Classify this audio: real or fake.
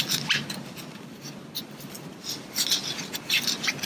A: real